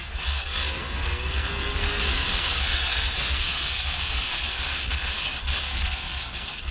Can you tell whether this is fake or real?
fake